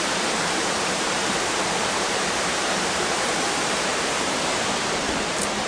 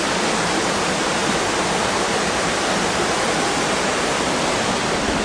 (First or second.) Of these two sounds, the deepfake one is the first